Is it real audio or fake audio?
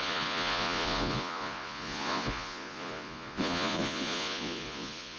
fake